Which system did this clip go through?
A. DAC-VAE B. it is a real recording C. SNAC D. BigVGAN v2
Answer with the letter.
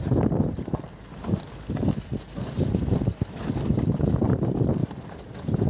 B